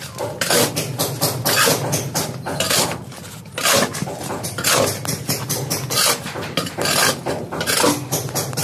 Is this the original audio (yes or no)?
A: yes